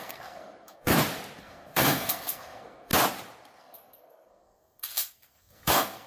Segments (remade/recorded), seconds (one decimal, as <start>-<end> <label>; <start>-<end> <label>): 0.0-0.9 remade; 0.9-1.4 recorded; 1.4-2.9 remade; 2.9-3.6 recorded; 3.6-6.1 remade